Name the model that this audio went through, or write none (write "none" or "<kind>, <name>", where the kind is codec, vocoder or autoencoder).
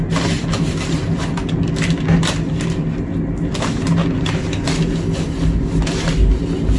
none